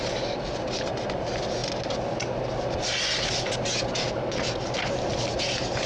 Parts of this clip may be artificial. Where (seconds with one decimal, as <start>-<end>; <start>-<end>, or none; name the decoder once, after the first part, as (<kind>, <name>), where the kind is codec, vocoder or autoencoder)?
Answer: none